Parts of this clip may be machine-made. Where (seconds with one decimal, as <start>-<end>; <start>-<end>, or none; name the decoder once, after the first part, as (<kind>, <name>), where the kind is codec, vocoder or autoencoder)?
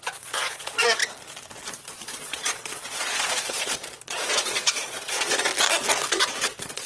0.0-1.0 (vocoder, Vocos); 1.7-5.5; 6.1-6.9